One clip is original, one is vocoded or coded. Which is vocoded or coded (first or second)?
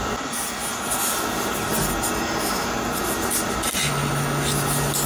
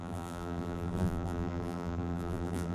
second